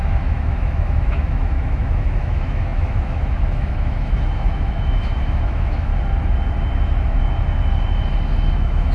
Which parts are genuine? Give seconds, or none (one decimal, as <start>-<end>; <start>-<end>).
5.9-8.5